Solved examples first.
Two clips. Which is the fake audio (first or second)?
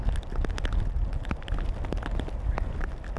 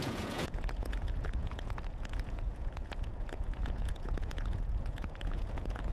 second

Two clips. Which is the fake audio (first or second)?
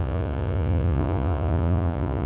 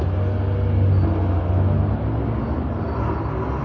first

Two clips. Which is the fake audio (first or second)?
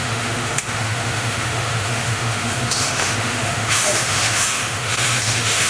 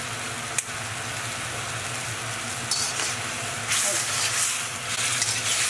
first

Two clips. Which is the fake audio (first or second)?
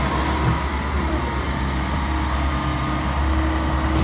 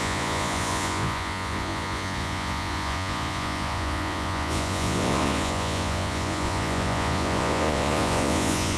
second